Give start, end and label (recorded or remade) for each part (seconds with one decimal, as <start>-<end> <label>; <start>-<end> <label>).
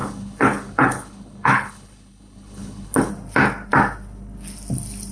0.0-3.1 remade; 3.1-5.1 recorded